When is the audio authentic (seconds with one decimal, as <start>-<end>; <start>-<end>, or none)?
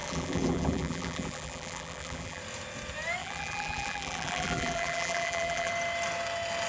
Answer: 2.4-3.2; 5.7-6.7